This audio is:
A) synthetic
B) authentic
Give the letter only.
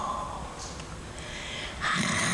B